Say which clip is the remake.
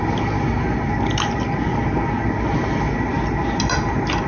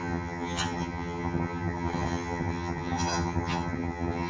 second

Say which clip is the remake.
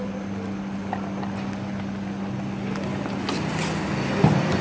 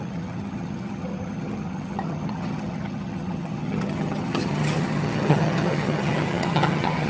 second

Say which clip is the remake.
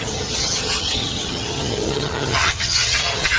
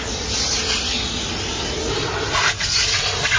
first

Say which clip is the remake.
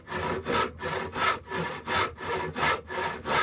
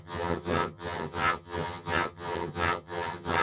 second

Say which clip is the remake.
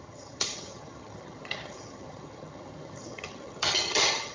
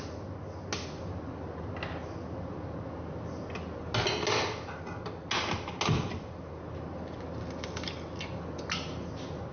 first